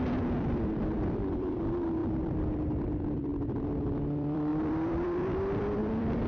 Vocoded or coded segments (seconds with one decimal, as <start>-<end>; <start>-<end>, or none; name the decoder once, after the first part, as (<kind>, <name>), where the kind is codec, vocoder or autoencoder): 0.0-6.3 (vocoder, BigVGAN v2)